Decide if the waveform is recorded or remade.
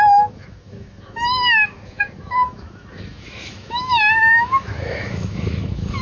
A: remade